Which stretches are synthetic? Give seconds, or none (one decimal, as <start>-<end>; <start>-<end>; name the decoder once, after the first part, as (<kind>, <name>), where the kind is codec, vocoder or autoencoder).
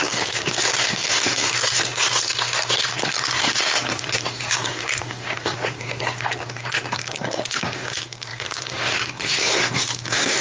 0.0-10.4 (codec, SNAC)